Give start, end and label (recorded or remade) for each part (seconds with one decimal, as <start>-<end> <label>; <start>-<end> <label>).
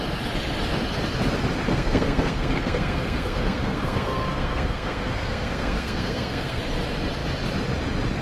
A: 0.0-1.7 recorded; 1.7-6.6 remade; 6.6-8.2 recorded